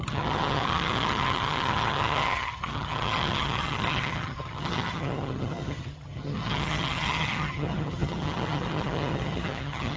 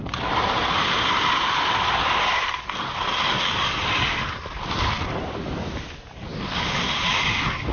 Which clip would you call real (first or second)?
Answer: second